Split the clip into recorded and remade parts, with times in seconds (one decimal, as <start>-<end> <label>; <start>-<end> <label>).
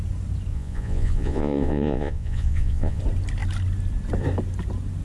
0.0-0.5 recorded; 0.5-3.0 remade; 3.0-5.0 recorded